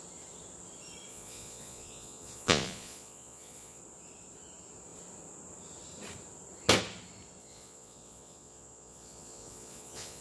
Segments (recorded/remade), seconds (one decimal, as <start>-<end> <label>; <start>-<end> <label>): 0.0-1.1 recorded; 1.1-3.8 remade; 3.8-7.4 recorded; 7.4-10.2 remade